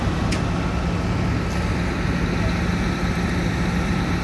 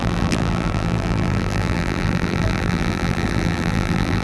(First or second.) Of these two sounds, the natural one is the first